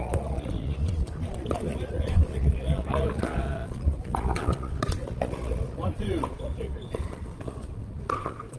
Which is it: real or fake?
fake